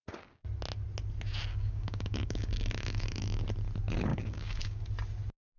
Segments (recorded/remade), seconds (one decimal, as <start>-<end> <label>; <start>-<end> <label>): 0.0-1.5 recorded; 1.5-3.4 remade; 3.4-4.1 recorded; 4.1-4.8 remade; 4.8-5.6 recorded